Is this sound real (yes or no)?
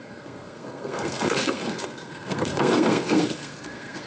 no